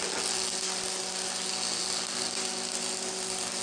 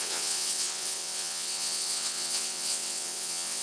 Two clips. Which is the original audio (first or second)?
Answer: first